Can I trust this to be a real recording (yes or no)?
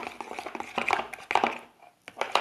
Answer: yes